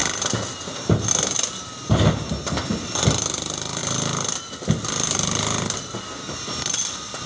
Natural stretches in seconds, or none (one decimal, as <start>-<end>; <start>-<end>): 0.0-7.3